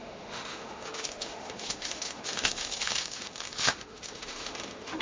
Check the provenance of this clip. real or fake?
fake